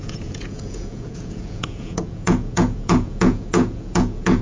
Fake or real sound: fake